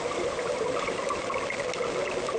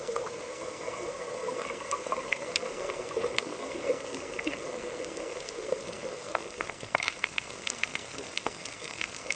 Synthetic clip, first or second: second